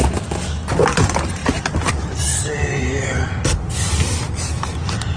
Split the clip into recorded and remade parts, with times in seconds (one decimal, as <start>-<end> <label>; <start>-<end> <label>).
0.0-5.2 recorded